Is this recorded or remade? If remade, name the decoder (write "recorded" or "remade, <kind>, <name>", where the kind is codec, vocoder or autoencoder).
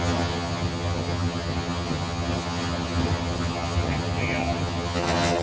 remade, vocoder, HiFi-GAN